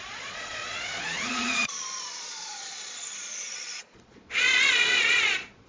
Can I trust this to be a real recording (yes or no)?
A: no